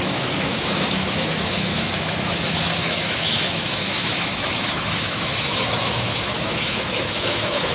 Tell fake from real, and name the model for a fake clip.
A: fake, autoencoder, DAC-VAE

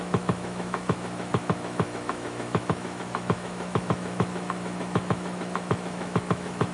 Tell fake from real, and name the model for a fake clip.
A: fake, autoencoder, DAC-VAE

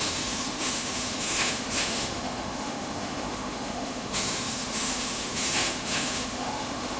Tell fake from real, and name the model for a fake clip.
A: fake, autoencoder, DAC-VAE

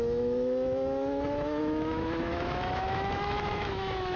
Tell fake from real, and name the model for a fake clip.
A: fake, autoencoder, DAC-VAE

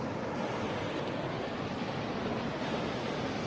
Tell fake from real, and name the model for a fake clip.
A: real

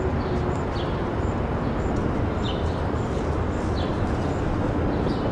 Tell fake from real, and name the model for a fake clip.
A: real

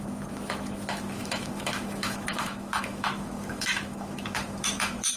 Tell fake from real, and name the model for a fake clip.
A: fake, autoencoder, DAC-VAE